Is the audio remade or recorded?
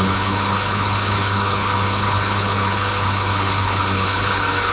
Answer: remade